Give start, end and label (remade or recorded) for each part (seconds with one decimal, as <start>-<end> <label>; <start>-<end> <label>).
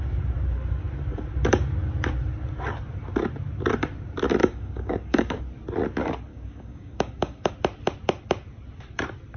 0.0-4.4 recorded; 4.4-5.4 remade; 5.4-6.3 recorded; 6.3-7.5 remade; 7.5-9.4 recorded